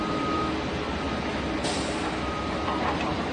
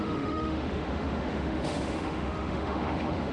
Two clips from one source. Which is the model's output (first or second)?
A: second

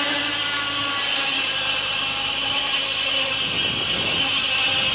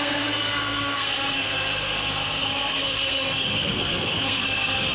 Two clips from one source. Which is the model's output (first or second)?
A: second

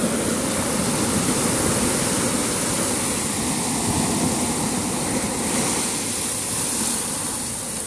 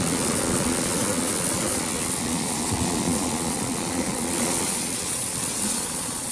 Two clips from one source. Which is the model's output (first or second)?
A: second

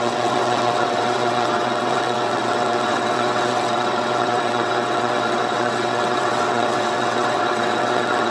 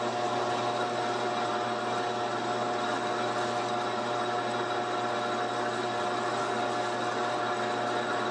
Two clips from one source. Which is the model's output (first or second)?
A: first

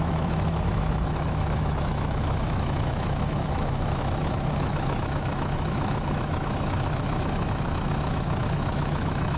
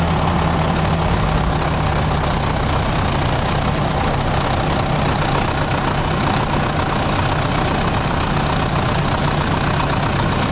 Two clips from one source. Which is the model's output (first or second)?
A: first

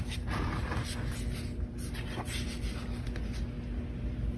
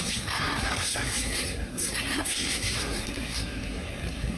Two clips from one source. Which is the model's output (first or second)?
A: second